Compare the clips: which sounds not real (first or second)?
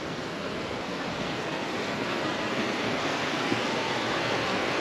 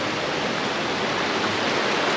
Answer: first